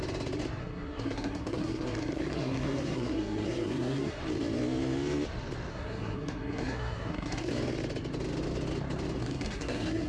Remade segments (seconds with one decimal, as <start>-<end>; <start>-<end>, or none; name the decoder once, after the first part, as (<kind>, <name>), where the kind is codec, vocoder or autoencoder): 0.6-4.2 (codec, SNAC); 5.7-7.5; 9.2-10.1